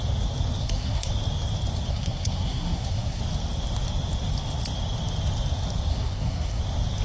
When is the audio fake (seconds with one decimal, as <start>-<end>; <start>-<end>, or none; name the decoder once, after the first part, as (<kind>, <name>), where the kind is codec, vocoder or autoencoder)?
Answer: 0.6-1.1 (codec, SNAC); 1.9-3.2; 5.9-6.6